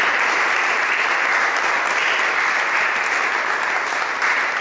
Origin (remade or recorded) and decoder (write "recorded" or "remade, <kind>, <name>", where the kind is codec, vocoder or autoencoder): recorded